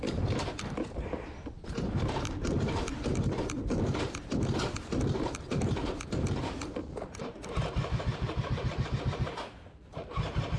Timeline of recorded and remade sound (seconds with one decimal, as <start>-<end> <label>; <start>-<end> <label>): 0.0-7.2 recorded; 7.2-8.4 remade; 8.4-10.6 recorded